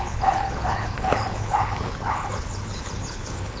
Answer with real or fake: fake